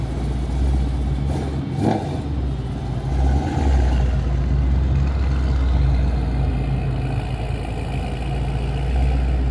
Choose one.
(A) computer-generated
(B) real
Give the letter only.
B